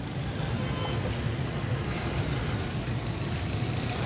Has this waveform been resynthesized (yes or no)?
no